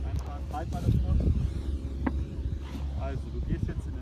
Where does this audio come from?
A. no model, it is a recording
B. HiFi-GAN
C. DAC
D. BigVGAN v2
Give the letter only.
A